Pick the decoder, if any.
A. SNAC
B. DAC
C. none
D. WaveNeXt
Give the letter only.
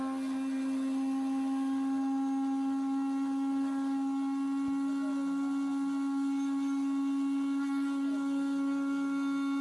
C